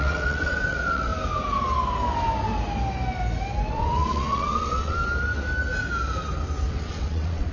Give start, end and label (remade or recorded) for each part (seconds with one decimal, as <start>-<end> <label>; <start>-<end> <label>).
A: 0.0-1.1 remade; 1.1-3.7 recorded; 3.7-5.0 remade; 5.0-6.7 recorded; 6.7-7.5 remade